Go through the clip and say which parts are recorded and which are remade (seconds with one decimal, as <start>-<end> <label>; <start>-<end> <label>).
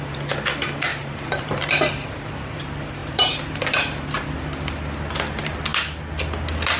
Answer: 0.0-0.9 recorded; 0.9-2.6 remade; 2.6-3.0 recorded; 3.0-3.6 remade; 3.6-6.8 recorded